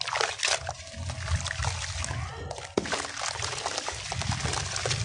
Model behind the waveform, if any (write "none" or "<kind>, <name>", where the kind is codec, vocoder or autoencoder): none